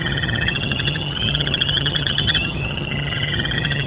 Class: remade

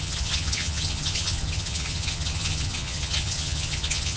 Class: remade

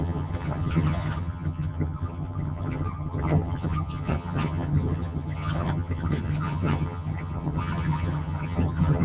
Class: remade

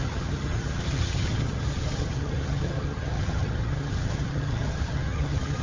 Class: remade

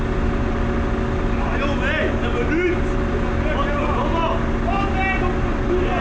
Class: recorded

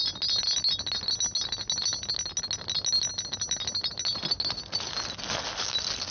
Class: recorded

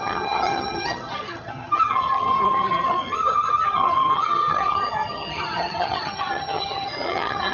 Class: remade